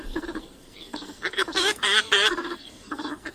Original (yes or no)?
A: no